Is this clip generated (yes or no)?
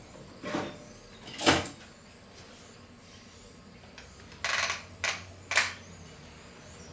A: no